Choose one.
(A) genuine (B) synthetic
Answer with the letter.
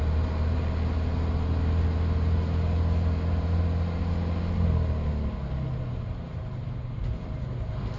A